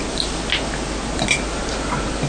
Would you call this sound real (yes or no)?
yes